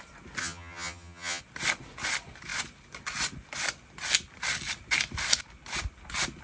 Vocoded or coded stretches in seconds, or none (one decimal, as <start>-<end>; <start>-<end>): 0.4-1.4